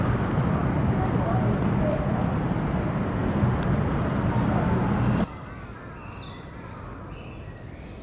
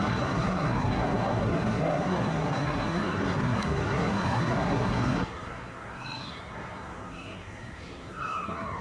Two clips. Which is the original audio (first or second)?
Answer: first